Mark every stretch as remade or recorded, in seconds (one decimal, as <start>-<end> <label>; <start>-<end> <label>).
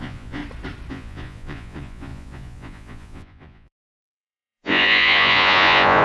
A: 0.0-0.4 remade; 0.4-0.9 recorded; 0.9-6.0 remade